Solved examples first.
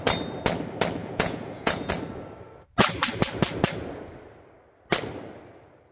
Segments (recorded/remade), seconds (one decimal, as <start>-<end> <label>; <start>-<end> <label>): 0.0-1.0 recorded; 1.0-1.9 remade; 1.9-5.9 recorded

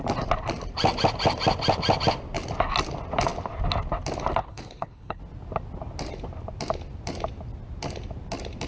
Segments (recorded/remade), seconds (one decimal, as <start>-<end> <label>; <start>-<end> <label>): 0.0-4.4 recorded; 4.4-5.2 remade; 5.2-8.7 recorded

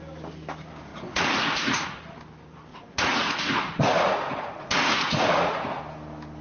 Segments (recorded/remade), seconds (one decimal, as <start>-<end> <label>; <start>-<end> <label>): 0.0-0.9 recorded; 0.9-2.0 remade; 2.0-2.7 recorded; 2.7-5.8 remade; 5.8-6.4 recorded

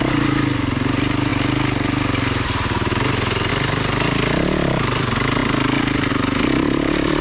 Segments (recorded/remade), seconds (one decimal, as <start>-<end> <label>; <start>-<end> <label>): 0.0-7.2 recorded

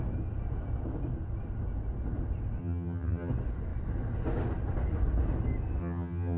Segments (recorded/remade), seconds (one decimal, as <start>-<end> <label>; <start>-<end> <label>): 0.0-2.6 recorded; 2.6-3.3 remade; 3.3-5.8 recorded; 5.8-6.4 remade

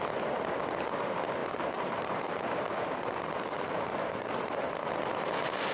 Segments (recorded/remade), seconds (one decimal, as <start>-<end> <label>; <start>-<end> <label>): 0.0-1.4 recorded; 1.4-4.8 remade; 4.8-5.7 recorded

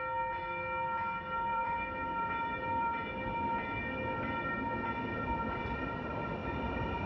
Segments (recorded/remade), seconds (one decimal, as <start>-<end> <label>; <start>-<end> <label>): 0.0-1.5 recorded; 1.5-4.4 remade; 4.4-7.1 recorded

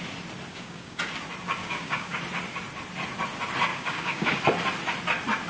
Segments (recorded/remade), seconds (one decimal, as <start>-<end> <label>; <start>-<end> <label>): 0.0-0.5 recorded; 0.5-1.0 remade; 1.0-1.6 recorded; 1.6-2.2 remade; 2.2-3.7 recorded; 3.7-4.4 remade; 4.4-5.5 recorded